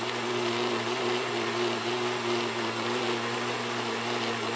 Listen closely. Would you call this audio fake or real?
real